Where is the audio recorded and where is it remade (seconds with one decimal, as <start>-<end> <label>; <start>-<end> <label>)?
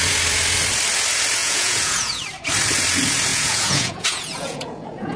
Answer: 0.0-1.4 recorded; 1.4-2.2 remade; 2.2-3.3 recorded; 3.3-5.2 remade